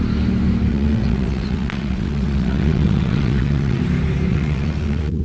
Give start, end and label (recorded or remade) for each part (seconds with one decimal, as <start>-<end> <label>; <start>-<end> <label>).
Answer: 0.0-0.7 recorded; 0.7-3.8 remade; 3.8-4.3 recorded; 4.3-5.2 remade

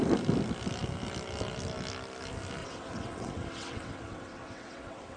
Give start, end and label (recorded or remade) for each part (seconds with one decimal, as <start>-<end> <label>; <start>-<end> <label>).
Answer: 0.0-2.6 recorded; 2.6-5.2 remade

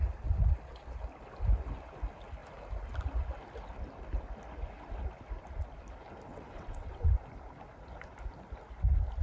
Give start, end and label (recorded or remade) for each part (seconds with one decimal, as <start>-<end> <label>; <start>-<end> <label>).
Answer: 0.0-6.3 recorded; 6.3-7.1 remade; 7.1-9.2 recorded

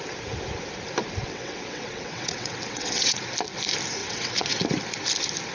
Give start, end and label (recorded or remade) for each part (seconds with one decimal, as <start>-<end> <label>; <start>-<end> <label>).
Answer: 0.0-1.2 recorded; 1.2-3.2 remade; 3.2-4.0 recorded; 4.0-4.6 remade; 4.6-5.5 recorded

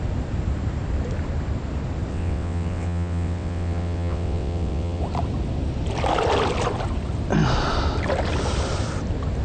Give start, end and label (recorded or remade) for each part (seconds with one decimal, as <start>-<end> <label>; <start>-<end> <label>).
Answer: 0.0-2.1 recorded; 2.1-5.0 remade; 5.0-9.4 recorded

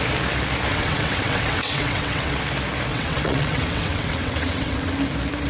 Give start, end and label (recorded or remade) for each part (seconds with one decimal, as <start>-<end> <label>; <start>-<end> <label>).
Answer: 0.0-0.7 recorded; 0.7-2.4 remade; 2.4-2.9 recorded; 2.9-4.9 remade; 4.9-5.5 recorded